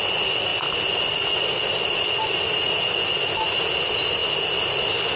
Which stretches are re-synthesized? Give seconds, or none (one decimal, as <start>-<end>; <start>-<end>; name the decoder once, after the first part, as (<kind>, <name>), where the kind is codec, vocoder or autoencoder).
none